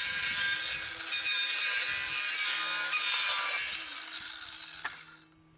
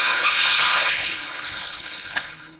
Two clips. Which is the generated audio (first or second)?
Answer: second